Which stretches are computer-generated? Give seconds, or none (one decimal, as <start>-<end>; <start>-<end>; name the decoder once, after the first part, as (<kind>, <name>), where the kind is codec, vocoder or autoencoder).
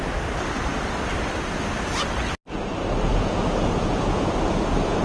3.1-4.2 (vocoder, Vocos)